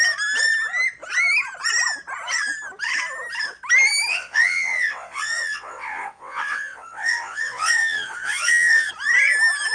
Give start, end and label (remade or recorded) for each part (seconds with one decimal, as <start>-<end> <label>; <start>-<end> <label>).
0.0-4.1 recorded; 4.1-8.9 remade; 8.9-9.7 recorded